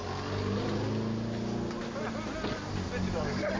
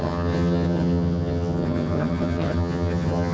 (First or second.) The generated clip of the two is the second